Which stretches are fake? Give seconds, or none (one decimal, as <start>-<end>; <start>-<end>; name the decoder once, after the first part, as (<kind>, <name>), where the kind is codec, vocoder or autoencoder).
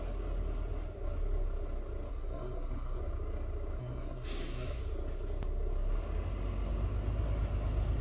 2.1-3.0 (codec, SNAC); 3.8-4.8